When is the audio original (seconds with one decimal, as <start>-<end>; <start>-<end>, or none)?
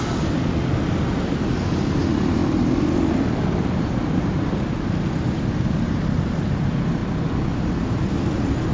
0.0-8.7